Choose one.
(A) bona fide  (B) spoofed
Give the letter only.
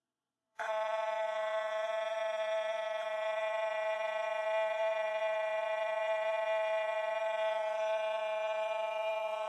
B